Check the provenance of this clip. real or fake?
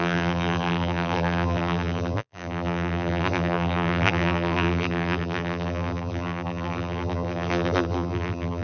fake